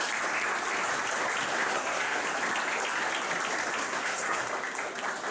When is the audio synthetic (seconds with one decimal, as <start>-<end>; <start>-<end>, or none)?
1.5-2.2; 3.8-4.5